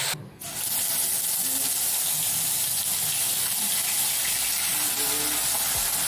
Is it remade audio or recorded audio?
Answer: recorded